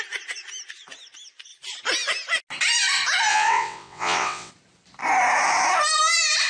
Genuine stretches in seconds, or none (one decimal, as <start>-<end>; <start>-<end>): 0.0-3.3; 4.5-6.5

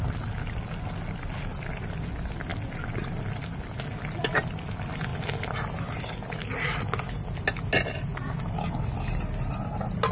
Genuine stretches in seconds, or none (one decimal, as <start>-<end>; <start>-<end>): 0.0-10.1

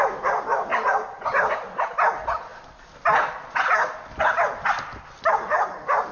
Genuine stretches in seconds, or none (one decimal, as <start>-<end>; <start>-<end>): 0.0-6.1

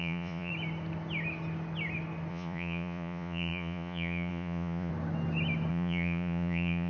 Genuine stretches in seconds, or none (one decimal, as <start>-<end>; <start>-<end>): 0.5-2.3; 4.9-5.7

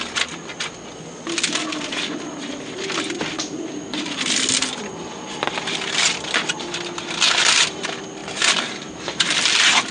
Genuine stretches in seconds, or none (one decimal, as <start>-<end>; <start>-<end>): 0.0-8.2